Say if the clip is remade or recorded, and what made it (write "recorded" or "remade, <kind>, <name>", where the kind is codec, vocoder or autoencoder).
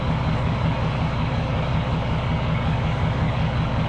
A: remade, codec, DAC